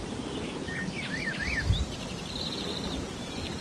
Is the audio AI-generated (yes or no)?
no